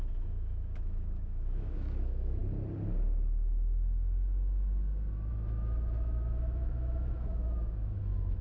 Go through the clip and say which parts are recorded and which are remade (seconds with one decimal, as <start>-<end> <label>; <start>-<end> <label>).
0.0-2.4 remade; 2.4-5.3 recorded; 5.3-8.4 remade

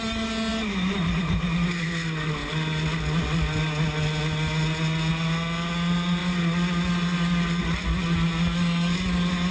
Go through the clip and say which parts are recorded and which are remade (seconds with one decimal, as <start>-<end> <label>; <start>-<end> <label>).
0.0-9.5 recorded

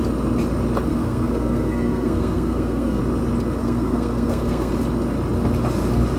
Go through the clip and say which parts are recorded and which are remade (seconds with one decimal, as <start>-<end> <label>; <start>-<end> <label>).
0.0-0.9 recorded; 0.9-3.0 remade; 3.0-3.6 recorded; 3.6-4.7 remade; 4.7-6.2 recorded

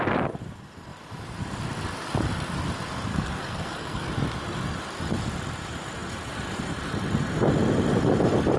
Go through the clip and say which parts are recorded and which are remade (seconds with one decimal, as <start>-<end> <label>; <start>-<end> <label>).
0.0-3.1 recorded; 3.1-4.1 remade; 4.1-8.6 recorded

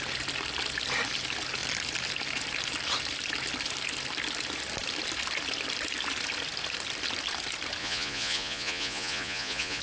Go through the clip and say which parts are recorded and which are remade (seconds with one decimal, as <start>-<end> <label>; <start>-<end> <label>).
0.0-7.8 recorded; 7.8-9.8 remade

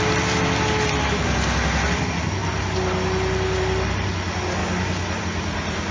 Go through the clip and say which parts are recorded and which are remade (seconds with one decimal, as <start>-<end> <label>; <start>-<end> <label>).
0.0-5.9 recorded

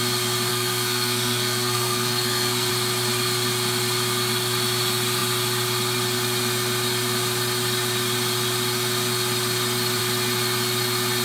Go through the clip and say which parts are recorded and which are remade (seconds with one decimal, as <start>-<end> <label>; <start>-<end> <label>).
0.0-0.5 recorded; 0.5-2.7 remade; 2.7-11.2 recorded

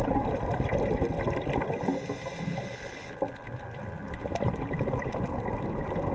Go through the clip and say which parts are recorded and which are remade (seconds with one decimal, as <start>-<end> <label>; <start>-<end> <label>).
0.0-0.7 remade; 0.7-2.9 recorded; 2.9-3.8 remade; 3.8-4.9 recorded; 4.9-6.1 remade